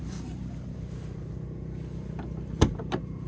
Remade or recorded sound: recorded